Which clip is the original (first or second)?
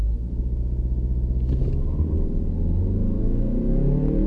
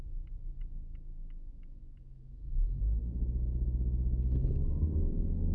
first